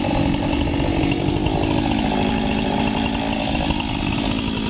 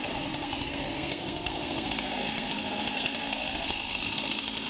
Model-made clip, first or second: second